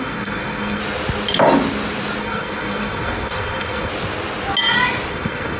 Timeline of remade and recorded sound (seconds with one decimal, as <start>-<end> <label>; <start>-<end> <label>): 0.0-0.8 remade; 0.8-2.2 recorded; 2.2-3.9 remade; 3.9-5.1 recorded; 5.1-5.6 remade